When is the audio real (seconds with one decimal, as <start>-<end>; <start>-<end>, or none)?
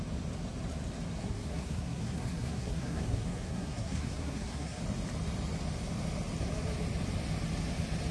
0.0-1.2; 4.8-8.1